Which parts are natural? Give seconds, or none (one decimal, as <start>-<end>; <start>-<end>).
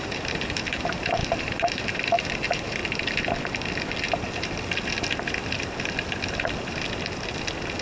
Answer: 2.8-7.8